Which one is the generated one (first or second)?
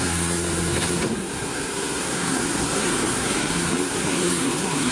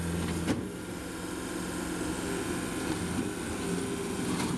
first